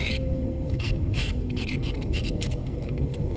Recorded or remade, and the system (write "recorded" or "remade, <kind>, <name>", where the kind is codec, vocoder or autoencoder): remade, codec, SNAC